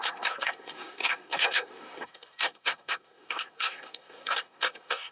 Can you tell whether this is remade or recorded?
remade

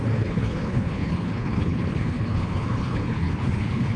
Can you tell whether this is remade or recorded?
remade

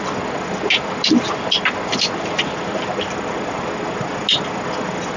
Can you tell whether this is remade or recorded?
recorded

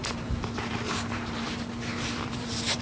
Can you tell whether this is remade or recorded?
remade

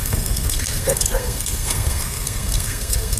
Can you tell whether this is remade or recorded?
remade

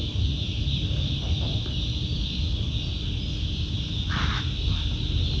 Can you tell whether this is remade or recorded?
recorded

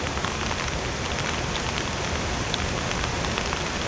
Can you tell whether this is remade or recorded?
recorded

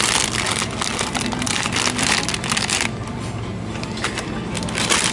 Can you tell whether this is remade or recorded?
recorded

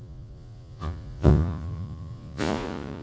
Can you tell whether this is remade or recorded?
remade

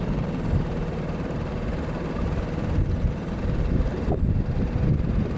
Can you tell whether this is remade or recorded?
remade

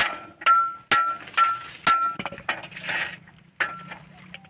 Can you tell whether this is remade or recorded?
recorded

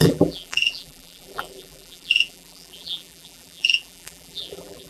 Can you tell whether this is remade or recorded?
remade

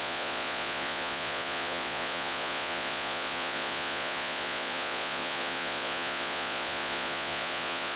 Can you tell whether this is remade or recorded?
remade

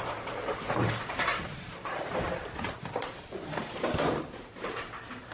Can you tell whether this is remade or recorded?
remade